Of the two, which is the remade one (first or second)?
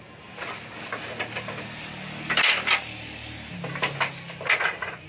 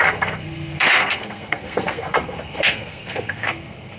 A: second